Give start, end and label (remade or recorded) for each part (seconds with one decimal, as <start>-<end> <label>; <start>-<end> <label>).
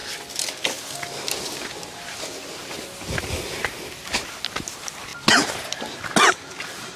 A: 0.0-7.0 recorded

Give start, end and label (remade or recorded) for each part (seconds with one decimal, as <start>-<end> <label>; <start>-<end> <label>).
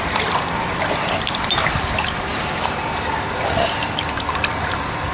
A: 0.0-2.3 recorded; 2.3-5.1 remade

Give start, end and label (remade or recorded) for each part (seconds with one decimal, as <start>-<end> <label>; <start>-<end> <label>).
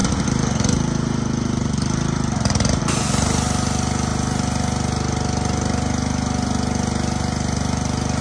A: 0.0-2.8 remade; 2.8-8.2 recorded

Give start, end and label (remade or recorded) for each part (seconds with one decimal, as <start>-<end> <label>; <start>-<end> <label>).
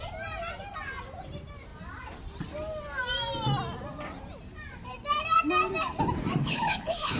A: 0.0-6.4 recorded; 6.4-7.2 remade